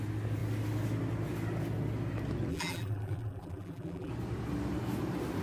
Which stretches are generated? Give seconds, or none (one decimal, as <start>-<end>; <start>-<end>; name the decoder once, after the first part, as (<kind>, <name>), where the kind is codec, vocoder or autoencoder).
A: 2.5-4.1 (vocoder, BigVGAN v2)